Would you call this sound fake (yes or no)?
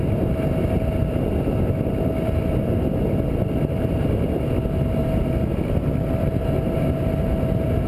no